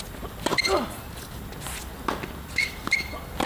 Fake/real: real